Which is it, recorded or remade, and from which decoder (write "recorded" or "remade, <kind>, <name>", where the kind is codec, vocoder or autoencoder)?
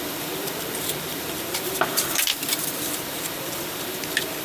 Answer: remade, vocoder, BigVGAN v2